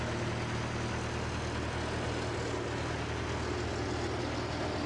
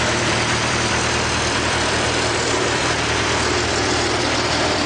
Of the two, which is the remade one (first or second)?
second